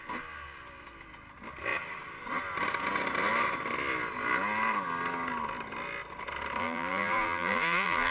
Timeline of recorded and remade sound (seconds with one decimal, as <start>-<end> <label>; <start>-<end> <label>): 0.0-6.6 recorded; 6.6-8.1 remade